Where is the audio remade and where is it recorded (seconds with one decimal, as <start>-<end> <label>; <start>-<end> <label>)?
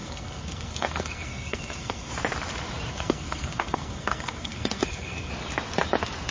0.0-2.1 remade; 2.1-2.9 recorded; 2.9-5.3 remade; 5.3-6.3 recorded